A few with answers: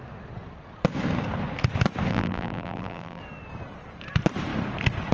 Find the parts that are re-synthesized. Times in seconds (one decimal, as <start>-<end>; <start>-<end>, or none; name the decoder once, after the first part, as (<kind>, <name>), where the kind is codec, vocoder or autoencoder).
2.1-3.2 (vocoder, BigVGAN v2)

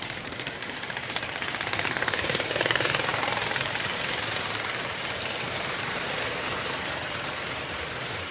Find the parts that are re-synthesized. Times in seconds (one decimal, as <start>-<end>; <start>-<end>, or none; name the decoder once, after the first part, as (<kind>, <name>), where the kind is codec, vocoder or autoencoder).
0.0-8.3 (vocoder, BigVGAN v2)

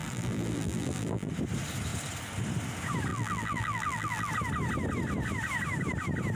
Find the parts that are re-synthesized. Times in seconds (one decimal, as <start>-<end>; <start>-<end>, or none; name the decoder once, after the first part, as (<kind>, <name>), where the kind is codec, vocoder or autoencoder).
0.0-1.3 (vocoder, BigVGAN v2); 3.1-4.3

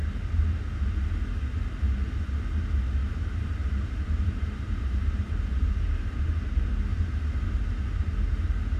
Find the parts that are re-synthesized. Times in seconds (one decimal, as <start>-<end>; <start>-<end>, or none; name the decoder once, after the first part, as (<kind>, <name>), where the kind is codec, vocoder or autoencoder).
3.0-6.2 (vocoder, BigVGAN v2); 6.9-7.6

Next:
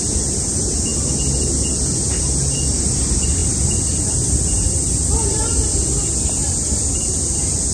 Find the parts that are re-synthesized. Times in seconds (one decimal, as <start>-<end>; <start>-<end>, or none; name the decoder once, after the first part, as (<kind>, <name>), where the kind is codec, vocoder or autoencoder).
0.0-0.9 (vocoder, BigVGAN v2); 2.8-5.4; 6.2-7.7